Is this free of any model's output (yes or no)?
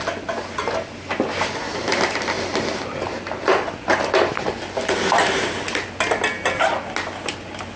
yes